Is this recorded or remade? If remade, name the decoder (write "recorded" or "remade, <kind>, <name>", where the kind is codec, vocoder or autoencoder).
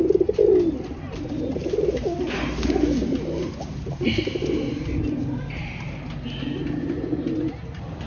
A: recorded